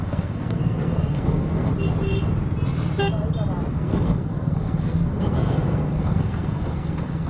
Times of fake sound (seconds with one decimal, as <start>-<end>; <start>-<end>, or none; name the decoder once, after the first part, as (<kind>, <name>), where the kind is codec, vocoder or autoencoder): 0.0-1.7 (codec, SNAC); 3.7-7.3